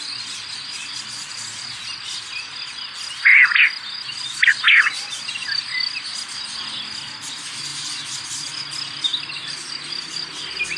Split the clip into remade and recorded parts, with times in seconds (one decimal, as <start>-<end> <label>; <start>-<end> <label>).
0.0-10.8 recorded